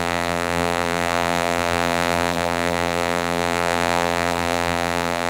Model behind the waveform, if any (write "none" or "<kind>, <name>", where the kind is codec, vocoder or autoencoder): vocoder, BigVGAN v2